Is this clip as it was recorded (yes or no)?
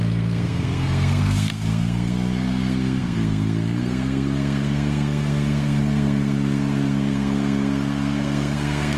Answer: no